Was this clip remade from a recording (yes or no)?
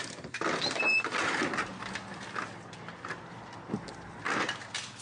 no